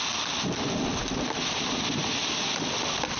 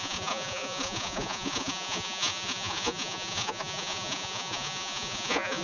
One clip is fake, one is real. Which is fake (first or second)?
second